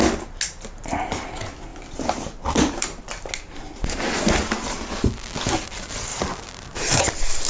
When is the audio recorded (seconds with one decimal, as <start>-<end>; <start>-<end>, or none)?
0.0-6.1; 7.0-7.5